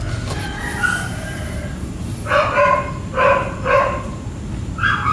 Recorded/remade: recorded